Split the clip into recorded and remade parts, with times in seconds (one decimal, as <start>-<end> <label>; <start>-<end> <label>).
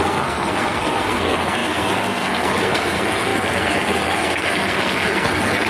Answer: 0.0-5.7 remade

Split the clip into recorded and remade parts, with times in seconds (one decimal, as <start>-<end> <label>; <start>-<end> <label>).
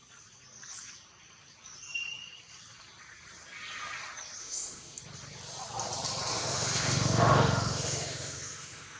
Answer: 0.0-4.4 recorded; 4.4-5.0 remade; 5.0-6.3 recorded; 6.3-9.0 remade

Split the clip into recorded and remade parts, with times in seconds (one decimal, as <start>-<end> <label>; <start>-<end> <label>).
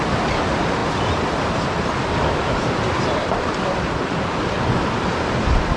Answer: 0.0-5.8 recorded